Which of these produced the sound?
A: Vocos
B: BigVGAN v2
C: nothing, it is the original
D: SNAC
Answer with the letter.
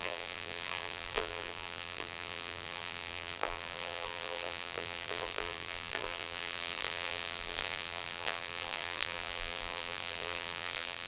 B